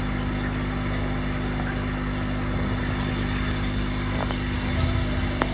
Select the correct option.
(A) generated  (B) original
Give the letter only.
B